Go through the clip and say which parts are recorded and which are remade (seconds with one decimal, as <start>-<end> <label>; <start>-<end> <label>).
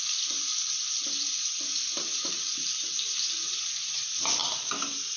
0.0-4.4 remade; 4.4-5.2 recorded